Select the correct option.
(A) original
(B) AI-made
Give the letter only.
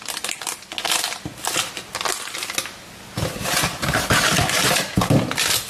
A